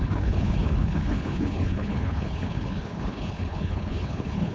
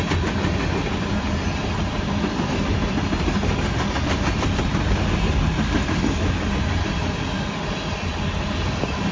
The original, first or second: second